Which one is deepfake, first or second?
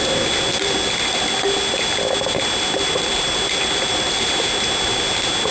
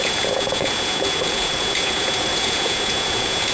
second